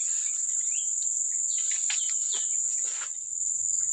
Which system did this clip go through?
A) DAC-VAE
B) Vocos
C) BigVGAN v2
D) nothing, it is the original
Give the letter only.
D